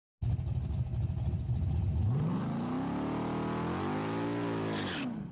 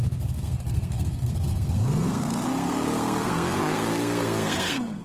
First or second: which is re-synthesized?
second